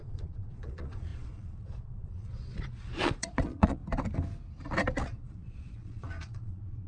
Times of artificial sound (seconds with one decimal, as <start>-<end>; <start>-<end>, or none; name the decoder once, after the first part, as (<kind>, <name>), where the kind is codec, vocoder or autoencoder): 0.0-3.8 (vocoder, Vocos); 5.0-6.9